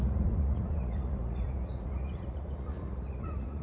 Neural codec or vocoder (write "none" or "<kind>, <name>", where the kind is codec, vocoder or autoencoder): vocoder, Vocos